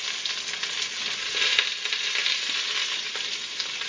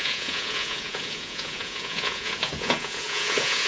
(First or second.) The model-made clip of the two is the second